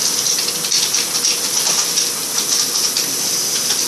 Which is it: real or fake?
real